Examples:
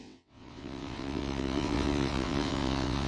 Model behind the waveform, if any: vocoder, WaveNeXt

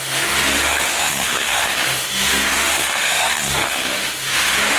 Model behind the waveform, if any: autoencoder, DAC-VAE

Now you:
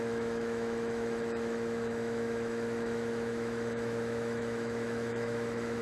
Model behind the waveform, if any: autoencoder, DAC-VAE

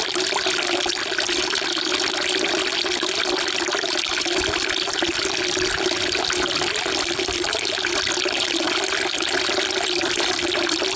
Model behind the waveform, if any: none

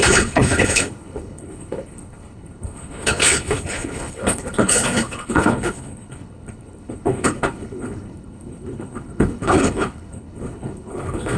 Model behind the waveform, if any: codec, HILCodec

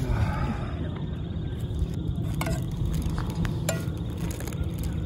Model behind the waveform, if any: none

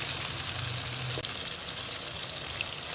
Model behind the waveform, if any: none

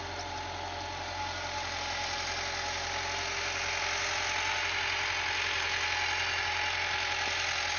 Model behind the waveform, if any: none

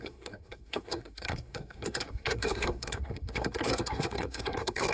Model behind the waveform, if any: codec, SNAC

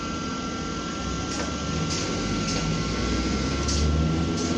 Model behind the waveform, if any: none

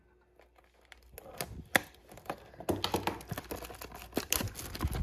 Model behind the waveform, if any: none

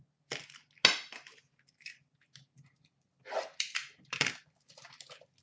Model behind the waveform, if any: none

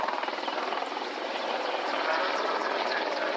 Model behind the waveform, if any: none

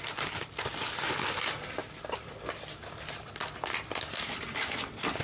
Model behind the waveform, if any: none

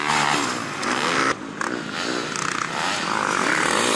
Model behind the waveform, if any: none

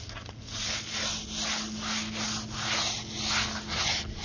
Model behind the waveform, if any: none